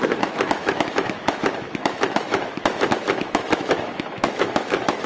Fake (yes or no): yes